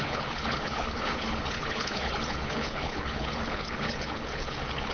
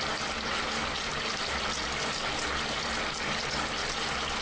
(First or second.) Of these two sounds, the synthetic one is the first